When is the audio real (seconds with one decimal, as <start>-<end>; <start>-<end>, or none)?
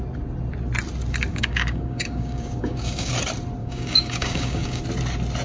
0.0-1.3; 3.1-3.6; 4.8-5.4